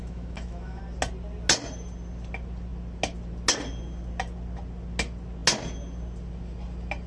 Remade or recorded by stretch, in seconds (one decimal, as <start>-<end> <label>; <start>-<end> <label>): 0.0-0.8 remade; 0.8-7.1 recorded